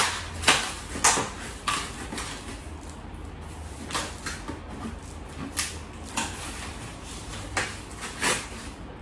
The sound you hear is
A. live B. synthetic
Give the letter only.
A